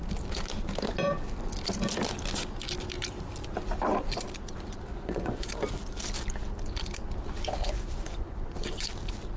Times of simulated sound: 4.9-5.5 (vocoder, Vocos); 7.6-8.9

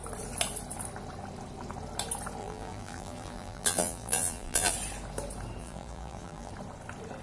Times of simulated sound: 2.4-4.7 (vocoder, BigVGAN v2); 5.6-6.5

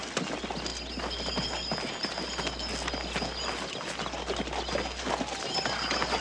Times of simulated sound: none

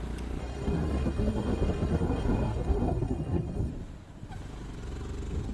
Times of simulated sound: 0.4-3.7 (codec, SNAC)

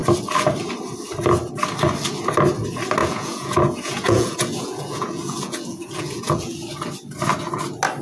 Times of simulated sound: 3.0-6.6 (vocoder, Vocos)

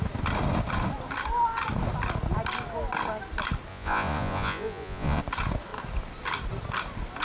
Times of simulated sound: 3.7-5.2 (vocoder, Vocos)